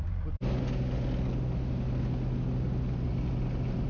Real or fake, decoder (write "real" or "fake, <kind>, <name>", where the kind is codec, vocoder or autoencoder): real